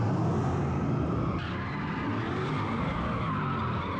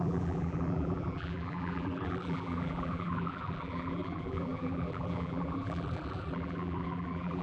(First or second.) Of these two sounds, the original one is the first